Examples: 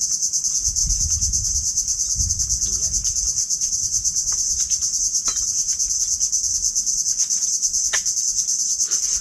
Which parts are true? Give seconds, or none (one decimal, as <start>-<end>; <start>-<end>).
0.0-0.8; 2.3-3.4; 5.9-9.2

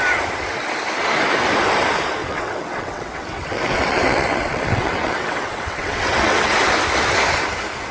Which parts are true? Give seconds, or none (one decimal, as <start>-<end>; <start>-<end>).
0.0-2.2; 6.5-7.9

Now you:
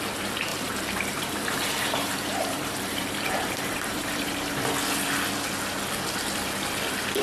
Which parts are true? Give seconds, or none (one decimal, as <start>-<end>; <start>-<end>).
0.0-0.5; 4.5-7.2

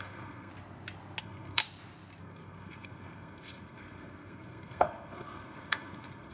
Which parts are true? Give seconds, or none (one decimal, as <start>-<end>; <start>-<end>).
0.5-1.2; 1.6-2.2

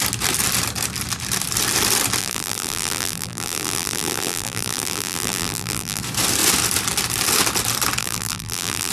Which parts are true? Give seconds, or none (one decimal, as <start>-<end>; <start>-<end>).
0.0-2.2; 6.0-8.0

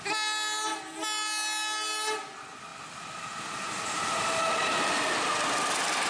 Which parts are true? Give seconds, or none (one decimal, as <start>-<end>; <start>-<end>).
0.0-6.1

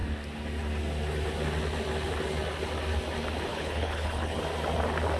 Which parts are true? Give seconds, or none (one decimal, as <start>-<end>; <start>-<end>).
0.0-3.5; 4.4-5.2

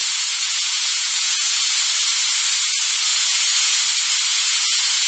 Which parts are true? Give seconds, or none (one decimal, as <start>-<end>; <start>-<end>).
1.8-3.1; 3.8-4.3